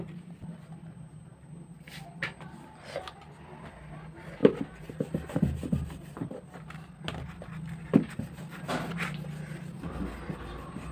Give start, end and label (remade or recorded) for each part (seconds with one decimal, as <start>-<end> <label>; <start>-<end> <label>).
0.0-10.9 recorded